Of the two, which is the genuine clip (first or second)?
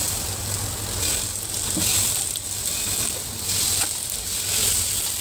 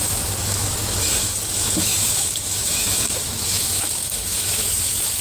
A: first